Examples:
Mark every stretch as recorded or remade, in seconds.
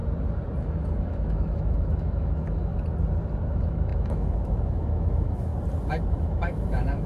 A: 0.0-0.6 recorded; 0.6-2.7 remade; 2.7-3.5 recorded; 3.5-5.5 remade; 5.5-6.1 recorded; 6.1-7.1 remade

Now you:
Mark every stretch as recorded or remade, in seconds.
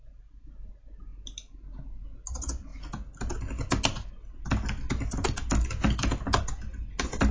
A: 0.0-7.3 recorded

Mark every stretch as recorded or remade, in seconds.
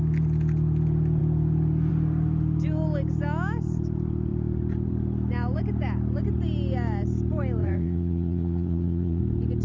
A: 0.0-7.6 recorded; 7.6-9.2 remade; 9.2-9.6 recorded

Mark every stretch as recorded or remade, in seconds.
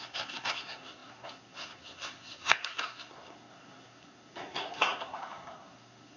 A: 0.0-6.2 remade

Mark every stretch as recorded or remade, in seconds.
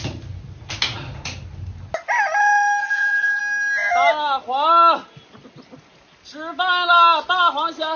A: 0.0-2.8 recorded; 2.8-3.4 remade; 3.4-8.0 recorded